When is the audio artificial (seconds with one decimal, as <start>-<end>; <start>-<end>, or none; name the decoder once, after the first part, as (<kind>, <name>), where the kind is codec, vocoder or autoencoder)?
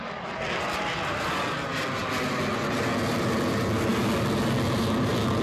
none